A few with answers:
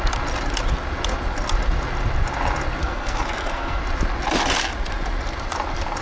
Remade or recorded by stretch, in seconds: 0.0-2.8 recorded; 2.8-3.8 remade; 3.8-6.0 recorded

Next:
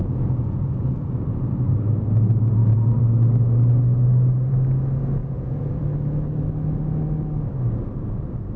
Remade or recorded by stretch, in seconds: 0.0-1.1 remade; 1.1-5.2 recorded; 5.2-5.8 remade; 5.8-8.6 recorded

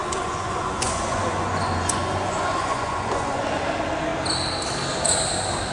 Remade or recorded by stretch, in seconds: 0.0-3.4 remade; 3.4-5.7 recorded

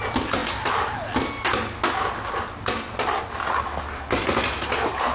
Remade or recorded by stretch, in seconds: 0.0-5.1 recorded